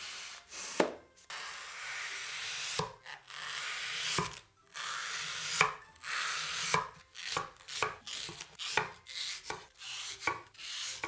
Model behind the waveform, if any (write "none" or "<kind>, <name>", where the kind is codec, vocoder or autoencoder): none